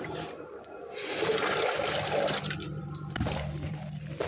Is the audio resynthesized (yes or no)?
yes